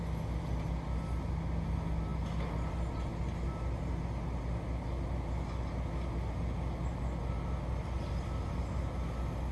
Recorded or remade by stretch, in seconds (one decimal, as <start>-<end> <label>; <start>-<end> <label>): 0.0-9.5 recorded